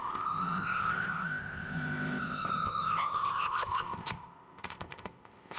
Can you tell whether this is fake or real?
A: fake